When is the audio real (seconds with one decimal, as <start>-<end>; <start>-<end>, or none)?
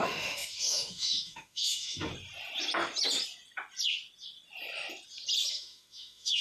2.1-5.5